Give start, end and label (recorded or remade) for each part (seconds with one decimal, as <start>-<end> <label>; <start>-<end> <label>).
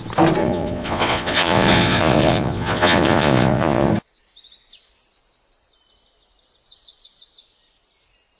0.0-0.4 recorded; 0.4-3.9 remade; 3.9-8.4 recorded